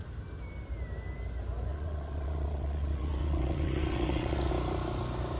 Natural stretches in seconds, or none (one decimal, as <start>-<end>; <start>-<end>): 0.0-1.7; 4.5-5.4